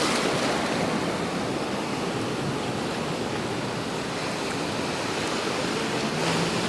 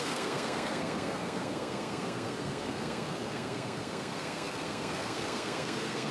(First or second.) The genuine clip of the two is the first